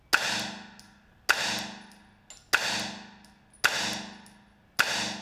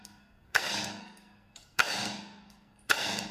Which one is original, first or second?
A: first